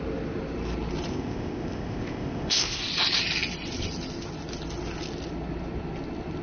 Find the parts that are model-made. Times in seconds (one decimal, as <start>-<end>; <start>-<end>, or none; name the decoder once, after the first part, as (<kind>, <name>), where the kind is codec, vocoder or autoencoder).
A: 1.1-2.8 (codec, ZipCodec)